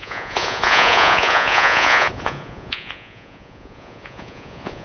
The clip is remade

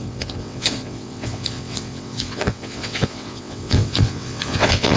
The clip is remade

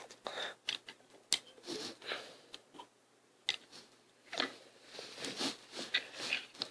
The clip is recorded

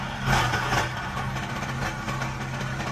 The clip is recorded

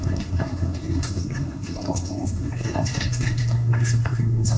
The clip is remade